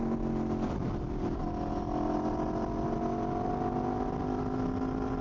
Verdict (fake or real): real